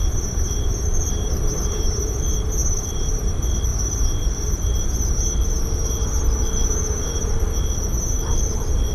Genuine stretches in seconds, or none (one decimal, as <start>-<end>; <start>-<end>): 2.2-2.6; 3.3-3.7; 5.2-6.6; 7.3-8.9